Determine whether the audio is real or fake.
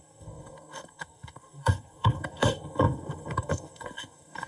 fake